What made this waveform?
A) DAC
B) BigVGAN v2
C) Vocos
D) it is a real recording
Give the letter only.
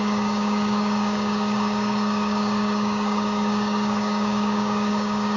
A